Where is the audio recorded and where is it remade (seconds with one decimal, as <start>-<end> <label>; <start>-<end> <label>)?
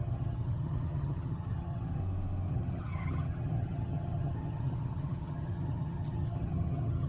0.0-2.0 remade; 2.0-2.5 recorded; 2.5-7.1 remade